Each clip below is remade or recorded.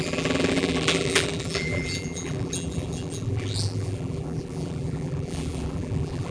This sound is remade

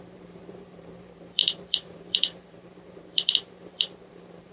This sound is remade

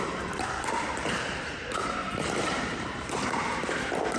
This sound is remade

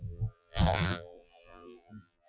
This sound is remade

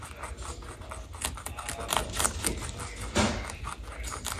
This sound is recorded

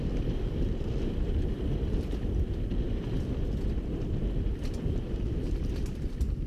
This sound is remade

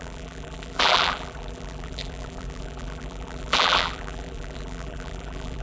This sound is remade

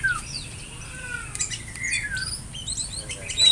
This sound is remade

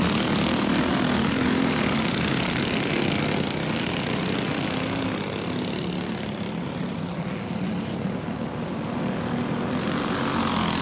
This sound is recorded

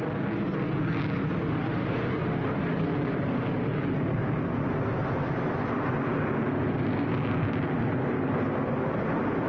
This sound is recorded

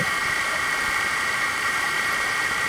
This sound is remade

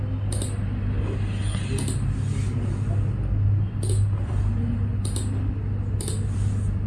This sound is recorded